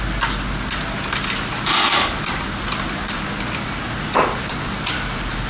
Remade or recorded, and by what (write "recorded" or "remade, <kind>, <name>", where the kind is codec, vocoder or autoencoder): recorded